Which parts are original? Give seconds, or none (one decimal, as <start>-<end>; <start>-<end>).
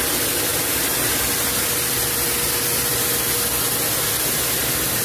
0.0-5.0